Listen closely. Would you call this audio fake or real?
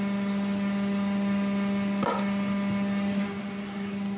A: real